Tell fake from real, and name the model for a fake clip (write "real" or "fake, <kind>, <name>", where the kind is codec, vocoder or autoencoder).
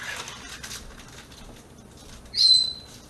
real